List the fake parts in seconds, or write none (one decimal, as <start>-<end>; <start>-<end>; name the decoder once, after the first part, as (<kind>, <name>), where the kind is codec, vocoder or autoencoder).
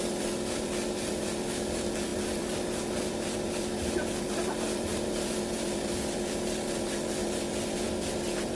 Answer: 7.2-8.1 (vocoder, BigVGAN v2)